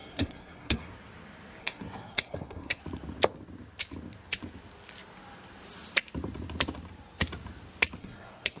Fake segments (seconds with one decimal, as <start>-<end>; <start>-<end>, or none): 0.0-0.9; 1.6-2.8; 8.0-8.6